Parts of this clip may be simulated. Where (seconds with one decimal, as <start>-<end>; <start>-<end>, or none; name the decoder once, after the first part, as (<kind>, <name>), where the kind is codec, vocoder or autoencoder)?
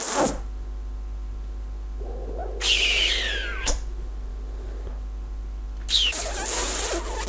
none